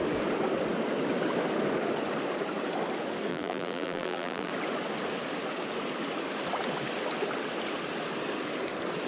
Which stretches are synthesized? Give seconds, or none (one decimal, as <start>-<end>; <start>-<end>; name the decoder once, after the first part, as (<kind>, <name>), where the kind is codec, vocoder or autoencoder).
3.3-4.5 (vocoder, BigVGAN v2)